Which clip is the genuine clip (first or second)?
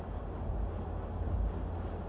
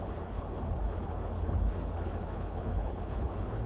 first